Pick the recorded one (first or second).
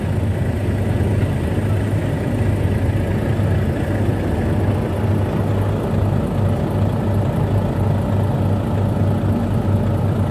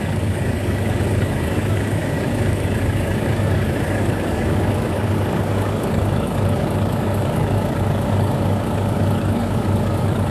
first